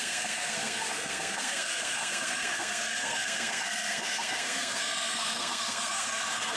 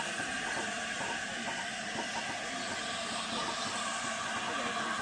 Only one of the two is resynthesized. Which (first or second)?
first